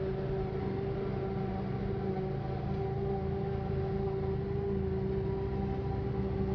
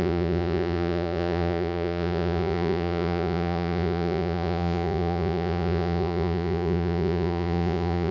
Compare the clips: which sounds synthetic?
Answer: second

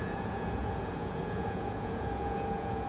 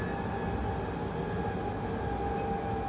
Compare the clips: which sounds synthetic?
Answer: first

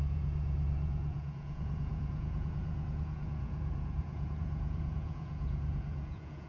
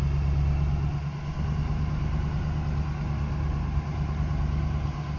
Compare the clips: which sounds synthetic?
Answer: first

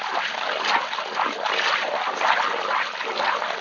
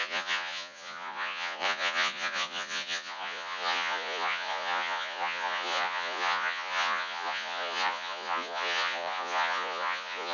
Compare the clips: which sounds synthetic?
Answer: second